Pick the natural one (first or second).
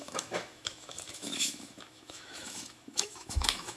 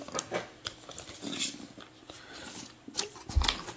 second